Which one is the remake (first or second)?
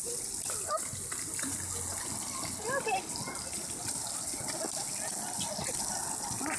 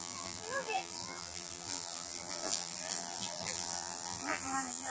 second